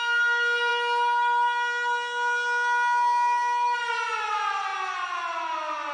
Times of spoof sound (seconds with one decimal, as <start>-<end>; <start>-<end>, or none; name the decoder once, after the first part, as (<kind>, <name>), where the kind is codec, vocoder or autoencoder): none